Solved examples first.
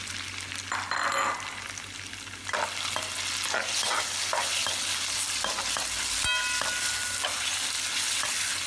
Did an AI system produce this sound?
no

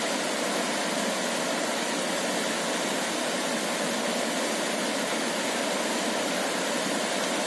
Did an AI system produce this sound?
no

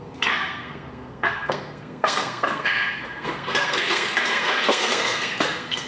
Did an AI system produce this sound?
yes